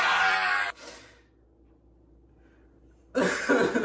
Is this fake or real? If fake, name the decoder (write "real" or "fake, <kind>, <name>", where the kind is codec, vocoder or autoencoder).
real